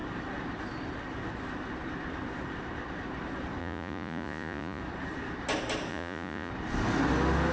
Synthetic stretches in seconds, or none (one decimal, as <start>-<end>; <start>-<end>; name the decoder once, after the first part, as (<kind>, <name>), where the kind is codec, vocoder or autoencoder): 3.6-4.8 (vocoder, Vocos); 5.9-6.5